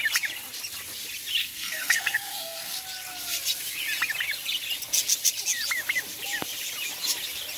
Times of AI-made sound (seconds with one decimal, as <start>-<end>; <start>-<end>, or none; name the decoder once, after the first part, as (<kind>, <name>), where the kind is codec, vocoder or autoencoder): 1.4-2.8 (codec, SNAC)